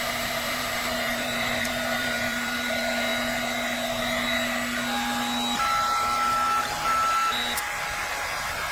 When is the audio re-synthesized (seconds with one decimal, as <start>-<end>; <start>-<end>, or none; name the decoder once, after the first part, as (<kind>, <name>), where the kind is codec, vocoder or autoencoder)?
0.0-3.1 (vocoder, BigVGAN v2); 6.7-7.2; 8.1-8.7